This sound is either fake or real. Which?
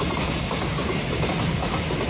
real